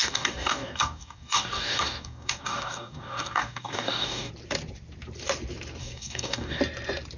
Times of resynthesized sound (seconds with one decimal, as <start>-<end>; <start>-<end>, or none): 0.0-4.3; 5.8-6.6